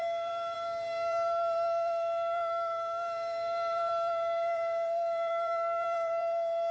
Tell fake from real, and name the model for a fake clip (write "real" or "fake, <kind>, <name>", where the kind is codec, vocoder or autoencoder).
fake, vocoder, BigVGAN v2